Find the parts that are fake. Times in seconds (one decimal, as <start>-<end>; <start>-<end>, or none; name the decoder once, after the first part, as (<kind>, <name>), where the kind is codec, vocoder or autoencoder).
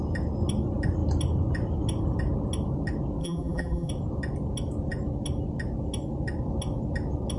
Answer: 3.2-3.9 (vocoder, BigVGAN v2)